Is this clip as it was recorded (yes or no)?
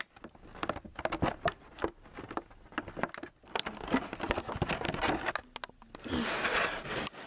yes